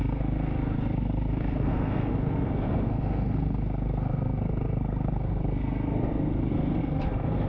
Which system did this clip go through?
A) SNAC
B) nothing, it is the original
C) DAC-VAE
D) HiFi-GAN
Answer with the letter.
A